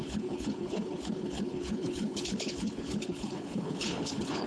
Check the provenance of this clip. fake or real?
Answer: fake